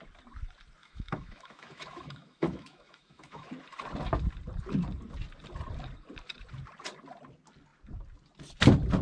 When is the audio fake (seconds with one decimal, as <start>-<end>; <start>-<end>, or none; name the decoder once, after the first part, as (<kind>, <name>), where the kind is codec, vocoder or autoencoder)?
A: 0.8-3.5 (autoencoder, DAC-VAE)